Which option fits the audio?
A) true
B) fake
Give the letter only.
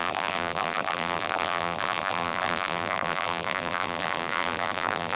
B